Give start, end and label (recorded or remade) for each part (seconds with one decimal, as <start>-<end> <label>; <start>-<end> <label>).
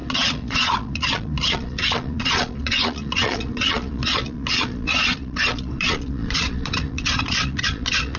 0.0-8.2 remade